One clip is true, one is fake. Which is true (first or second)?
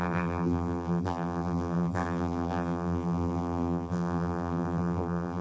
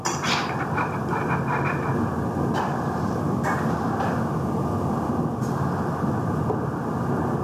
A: second